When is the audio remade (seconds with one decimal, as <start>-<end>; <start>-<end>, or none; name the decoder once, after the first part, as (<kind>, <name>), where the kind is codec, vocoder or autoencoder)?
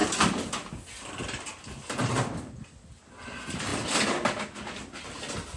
none